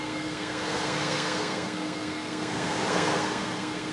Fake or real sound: fake